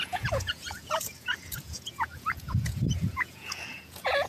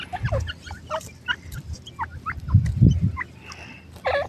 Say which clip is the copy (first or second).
first